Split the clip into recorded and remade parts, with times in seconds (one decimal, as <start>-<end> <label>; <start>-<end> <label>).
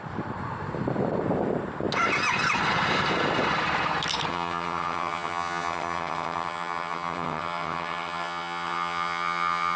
0.0-4.3 recorded; 4.3-9.8 remade